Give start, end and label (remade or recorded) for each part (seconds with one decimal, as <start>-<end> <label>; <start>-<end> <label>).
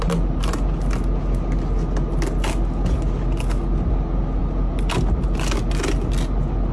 0.0-6.7 recorded